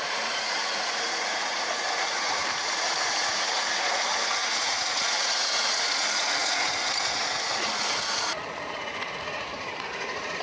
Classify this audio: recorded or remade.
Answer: remade